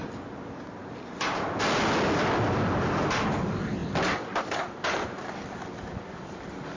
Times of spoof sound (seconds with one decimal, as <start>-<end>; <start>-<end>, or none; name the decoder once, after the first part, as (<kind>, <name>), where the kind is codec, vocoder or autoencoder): none